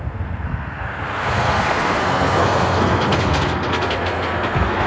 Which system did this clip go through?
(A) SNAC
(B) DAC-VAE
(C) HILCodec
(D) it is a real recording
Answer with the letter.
A